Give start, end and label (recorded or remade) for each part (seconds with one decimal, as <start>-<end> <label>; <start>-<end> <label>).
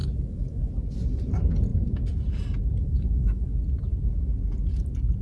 0.0-0.7 remade; 0.7-2.8 recorded; 2.8-3.5 remade; 3.5-5.2 recorded